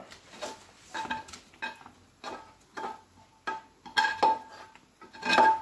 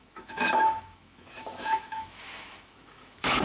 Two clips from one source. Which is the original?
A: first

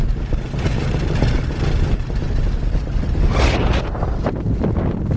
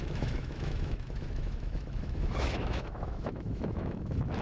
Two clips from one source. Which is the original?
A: first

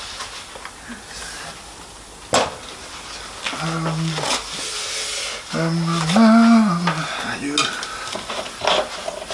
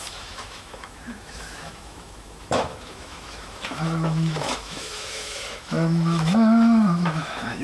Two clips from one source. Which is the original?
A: first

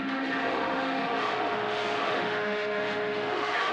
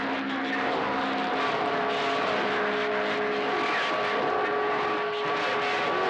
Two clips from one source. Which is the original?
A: second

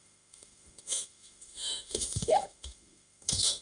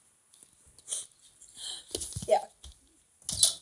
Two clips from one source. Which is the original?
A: second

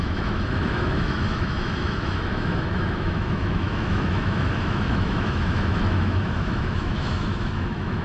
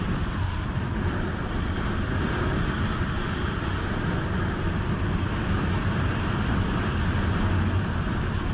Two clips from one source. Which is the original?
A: second